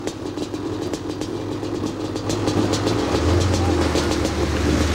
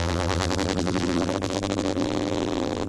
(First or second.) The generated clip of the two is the second